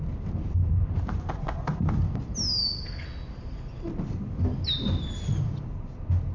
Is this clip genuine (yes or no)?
yes